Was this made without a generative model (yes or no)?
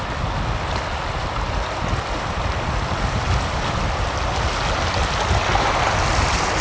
yes